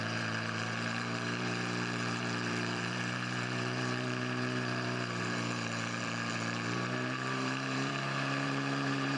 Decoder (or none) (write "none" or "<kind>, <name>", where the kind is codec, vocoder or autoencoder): vocoder, BigVGAN v2